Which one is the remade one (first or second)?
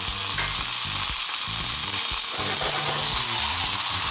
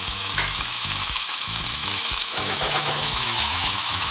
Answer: second